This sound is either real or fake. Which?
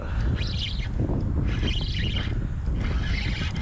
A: real